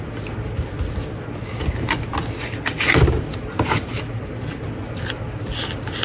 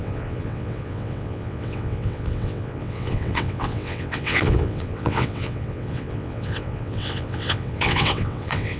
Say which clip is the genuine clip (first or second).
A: first